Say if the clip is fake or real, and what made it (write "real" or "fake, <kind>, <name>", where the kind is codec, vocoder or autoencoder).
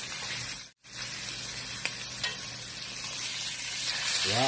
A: real